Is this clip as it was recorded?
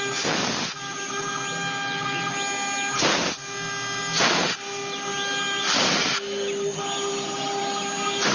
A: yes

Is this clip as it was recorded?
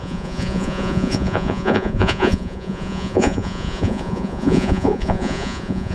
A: no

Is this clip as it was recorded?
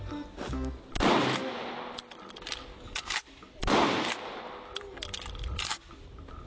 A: yes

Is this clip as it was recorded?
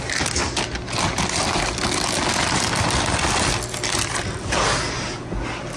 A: yes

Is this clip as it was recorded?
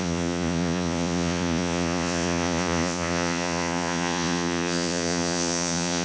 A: no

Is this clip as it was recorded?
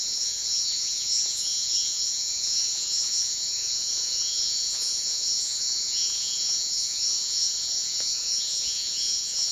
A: no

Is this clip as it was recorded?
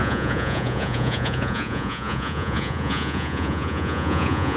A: no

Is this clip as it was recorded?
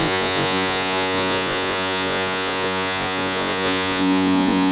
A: no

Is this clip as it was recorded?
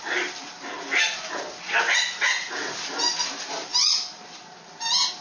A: yes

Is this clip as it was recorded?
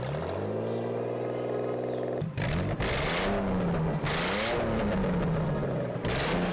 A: yes